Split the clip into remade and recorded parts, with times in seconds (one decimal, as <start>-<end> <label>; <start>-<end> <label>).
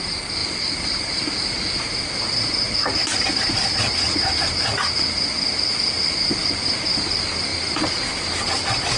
0.0-9.0 recorded